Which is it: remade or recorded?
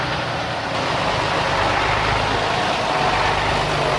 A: recorded